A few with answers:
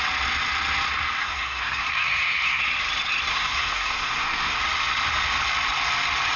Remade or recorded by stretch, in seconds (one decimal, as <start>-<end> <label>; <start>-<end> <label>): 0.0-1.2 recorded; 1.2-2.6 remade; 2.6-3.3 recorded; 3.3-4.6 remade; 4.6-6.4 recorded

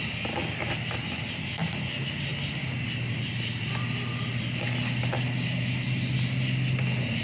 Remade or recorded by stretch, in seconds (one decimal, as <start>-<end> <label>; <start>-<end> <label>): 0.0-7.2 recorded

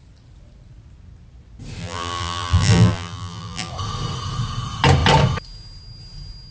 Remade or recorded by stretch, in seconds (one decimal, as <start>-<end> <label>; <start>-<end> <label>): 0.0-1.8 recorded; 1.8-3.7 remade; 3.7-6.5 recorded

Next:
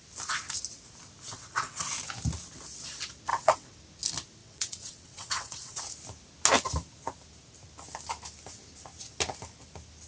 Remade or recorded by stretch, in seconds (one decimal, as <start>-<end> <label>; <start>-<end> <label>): 0.0-1.3 recorded; 1.3-1.9 remade; 1.9-3.3 recorded; 3.3-3.8 remade; 3.8-4.4 recorded; 4.4-5.8 remade; 5.8-10.1 recorded

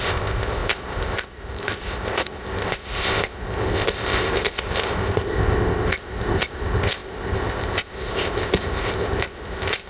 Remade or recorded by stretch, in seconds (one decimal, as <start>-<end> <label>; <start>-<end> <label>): 0.0-9.9 remade

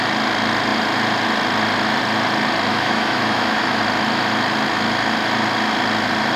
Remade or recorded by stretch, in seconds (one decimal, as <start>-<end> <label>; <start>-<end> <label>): 0.0-2.7 recorded; 2.7-3.8 remade; 3.8-6.4 recorded